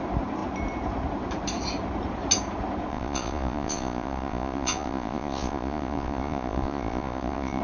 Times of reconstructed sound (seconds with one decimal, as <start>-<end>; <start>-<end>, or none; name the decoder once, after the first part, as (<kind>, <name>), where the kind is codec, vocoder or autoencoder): 2.9-7.6 (vocoder, Vocos)